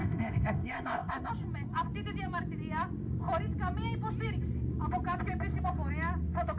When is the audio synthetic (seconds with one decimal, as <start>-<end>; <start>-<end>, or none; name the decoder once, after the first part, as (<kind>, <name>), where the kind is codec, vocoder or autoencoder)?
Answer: 0.0-1.3 (codec, ZipCodec)